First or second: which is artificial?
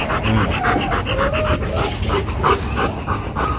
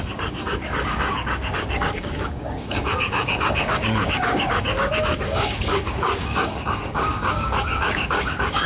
second